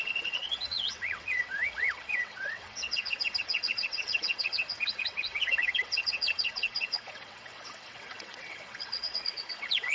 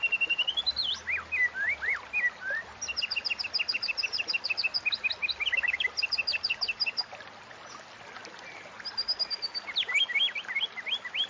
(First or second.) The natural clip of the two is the second